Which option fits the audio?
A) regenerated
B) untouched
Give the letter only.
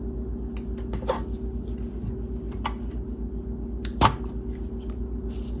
B